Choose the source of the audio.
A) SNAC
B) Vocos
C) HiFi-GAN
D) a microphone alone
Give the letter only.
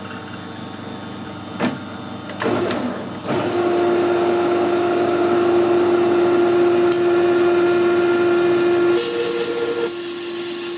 D